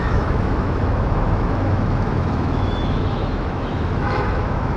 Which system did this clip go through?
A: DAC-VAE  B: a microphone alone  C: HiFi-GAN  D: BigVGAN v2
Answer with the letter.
A